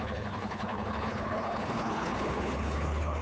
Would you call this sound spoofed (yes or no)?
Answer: yes